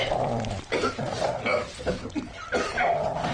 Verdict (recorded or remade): recorded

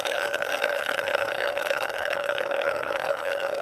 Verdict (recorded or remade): remade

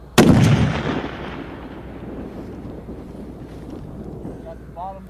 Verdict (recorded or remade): recorded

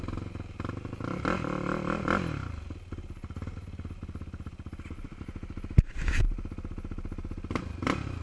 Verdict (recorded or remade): recorded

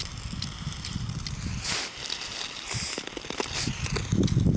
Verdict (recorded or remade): recorded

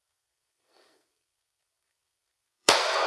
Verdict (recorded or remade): remade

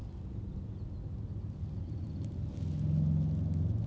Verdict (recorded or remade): recorded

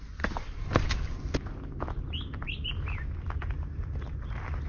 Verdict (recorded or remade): recorded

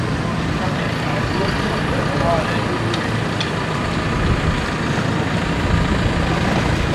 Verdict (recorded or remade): recorded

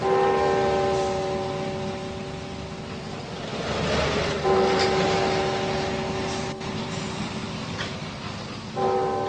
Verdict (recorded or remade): recorded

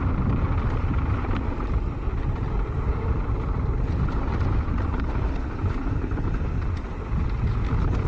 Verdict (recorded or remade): recorded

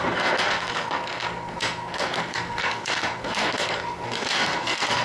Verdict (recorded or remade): remade